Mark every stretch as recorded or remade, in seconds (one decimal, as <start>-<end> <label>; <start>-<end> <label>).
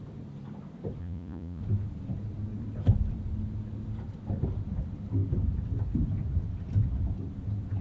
0.0-1.0 recorded; 1.0-1.6 remade; 1.6-7.8 recorded